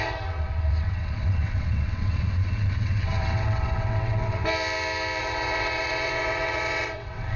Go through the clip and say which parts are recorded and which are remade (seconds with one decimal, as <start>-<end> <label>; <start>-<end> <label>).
0.0-4.4 remade; 4.4-5.2 recorded; 5.2-7.4 remade